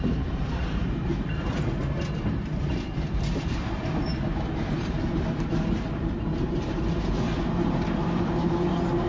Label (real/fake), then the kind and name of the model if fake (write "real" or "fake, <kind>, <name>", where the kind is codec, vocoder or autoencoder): fake, vocoder, BigVGAN v2